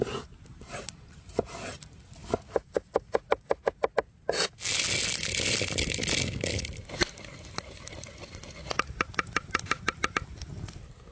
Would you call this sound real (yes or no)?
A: yes